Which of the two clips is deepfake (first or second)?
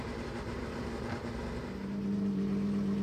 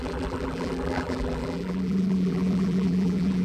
second